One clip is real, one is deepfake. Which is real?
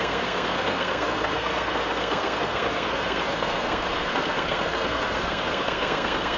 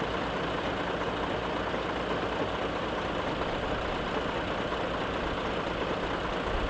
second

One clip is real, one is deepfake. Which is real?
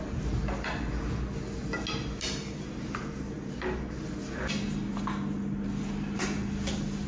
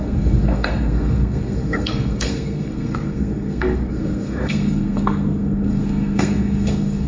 first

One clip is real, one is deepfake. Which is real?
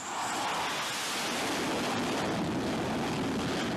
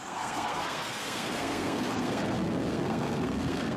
first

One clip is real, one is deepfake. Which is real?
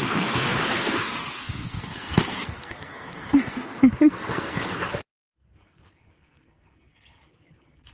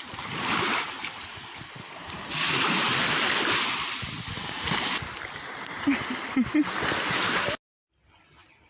second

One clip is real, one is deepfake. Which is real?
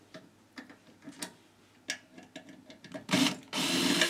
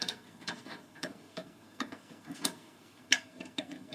first